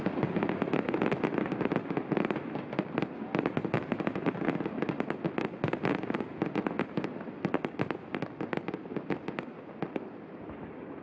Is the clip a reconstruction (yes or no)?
no